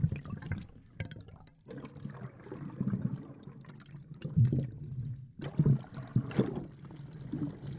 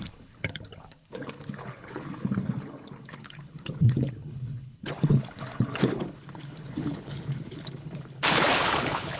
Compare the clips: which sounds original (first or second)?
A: first